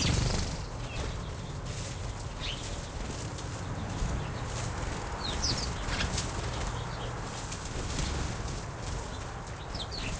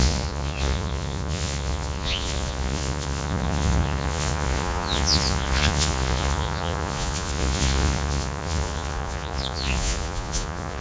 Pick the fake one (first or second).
second